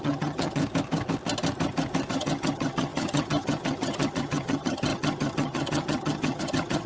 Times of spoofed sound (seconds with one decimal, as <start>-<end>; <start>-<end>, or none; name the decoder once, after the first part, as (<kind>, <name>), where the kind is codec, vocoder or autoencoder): 0.0-0.6 (vocoder, HiFi-GAN); 2.1-6.9